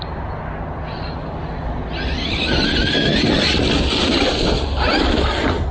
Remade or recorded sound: recorded